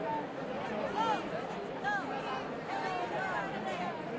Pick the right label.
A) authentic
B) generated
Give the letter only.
A